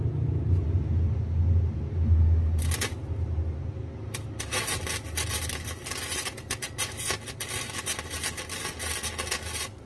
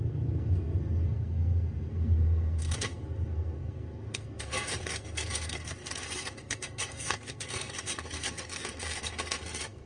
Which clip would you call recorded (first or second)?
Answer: first